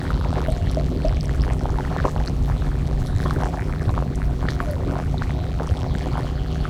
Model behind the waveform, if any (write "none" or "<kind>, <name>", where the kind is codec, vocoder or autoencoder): vocoder, BigVGAN v2